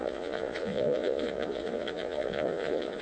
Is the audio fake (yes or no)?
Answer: yes